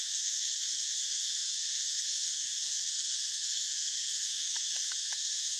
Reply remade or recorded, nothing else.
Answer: remade